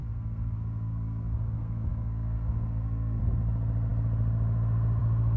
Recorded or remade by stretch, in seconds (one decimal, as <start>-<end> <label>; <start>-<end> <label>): 0.0-3.2 remade; 3.2-5.4 recorded